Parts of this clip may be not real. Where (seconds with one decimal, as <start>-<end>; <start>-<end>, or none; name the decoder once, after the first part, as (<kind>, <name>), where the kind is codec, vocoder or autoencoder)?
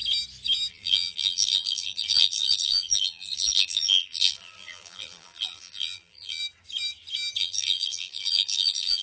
0.7-6.4 (vocoder, BigVGAN v2); 7.4-9.0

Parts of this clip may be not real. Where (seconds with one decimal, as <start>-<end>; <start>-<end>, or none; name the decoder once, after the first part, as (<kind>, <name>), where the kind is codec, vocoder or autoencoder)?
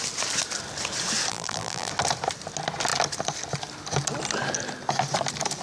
1.3-1.9 (vocoder, BigVGAN v2)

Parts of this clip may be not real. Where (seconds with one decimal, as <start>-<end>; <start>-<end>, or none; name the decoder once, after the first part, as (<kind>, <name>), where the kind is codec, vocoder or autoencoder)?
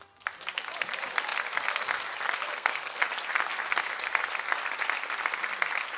2.4-3.0 (codec, SNAC)